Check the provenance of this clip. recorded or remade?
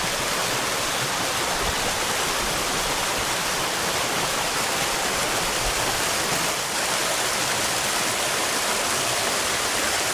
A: recorded